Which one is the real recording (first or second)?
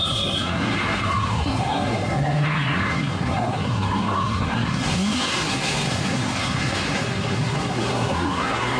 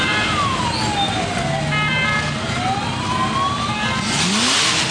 second